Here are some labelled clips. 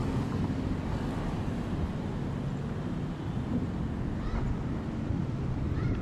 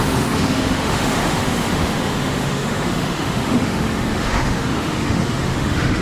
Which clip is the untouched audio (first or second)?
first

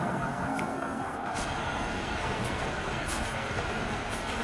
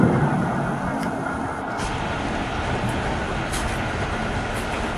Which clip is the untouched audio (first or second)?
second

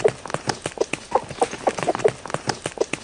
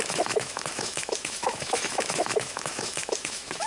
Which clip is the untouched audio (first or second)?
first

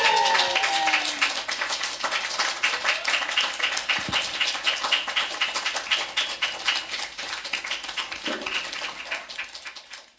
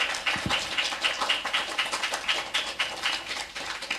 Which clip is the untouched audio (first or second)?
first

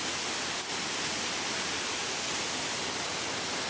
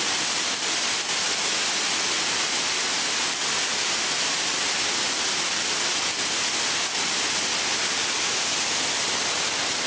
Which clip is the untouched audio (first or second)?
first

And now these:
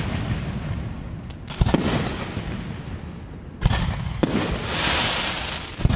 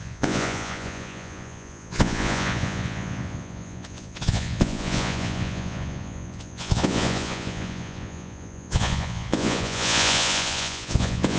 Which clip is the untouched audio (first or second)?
first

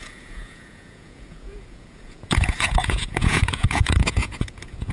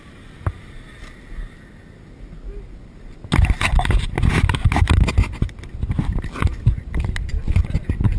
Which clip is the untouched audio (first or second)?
second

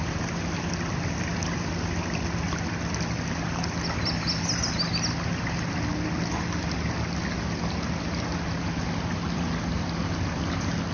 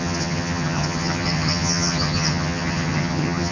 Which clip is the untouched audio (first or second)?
first